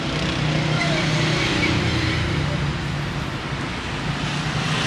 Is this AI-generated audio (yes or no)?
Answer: no